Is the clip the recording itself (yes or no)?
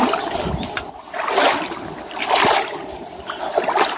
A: yes